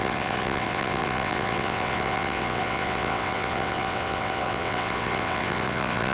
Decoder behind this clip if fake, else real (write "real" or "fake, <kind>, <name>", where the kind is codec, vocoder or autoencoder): fake, vocoder, WaveNeXt